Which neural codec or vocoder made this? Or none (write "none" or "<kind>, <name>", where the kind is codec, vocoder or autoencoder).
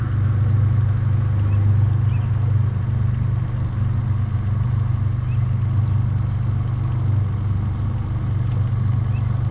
none